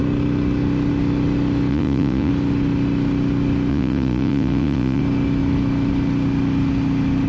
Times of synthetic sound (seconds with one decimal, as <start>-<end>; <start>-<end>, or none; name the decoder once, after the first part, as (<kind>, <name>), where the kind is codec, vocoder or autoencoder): 1.7-2.3 (vocoder, Vocos); 3.7-5.0